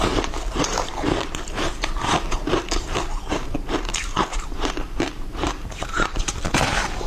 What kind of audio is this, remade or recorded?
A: remade